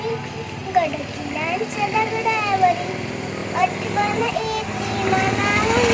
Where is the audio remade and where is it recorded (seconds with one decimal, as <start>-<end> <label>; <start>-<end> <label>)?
0.0-3.4 recorded; 3.4-4.3 remade; 4.3-5.9 recorded